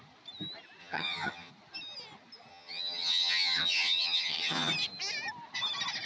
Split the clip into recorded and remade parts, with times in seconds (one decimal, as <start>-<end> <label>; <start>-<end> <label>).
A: 0.0-0.8 recorded; 0.8-1.5 remade; 1.5-2.5 recorded; 2.5-4.7 remade; 4.7-6.1 recorded